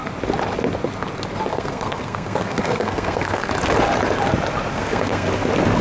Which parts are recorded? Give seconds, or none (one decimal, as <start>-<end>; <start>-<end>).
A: 0.0-1.5; 3.5-4.7; 5.3-5.8